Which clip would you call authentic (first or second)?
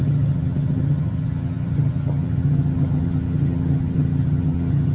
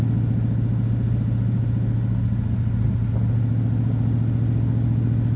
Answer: second